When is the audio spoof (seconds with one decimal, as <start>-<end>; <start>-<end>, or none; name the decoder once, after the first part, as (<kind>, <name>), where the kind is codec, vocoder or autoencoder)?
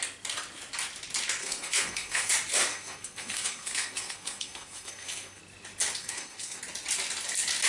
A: 1.4-2.3 (codec, SNAC); 2.7-5.4; 6.0-6.6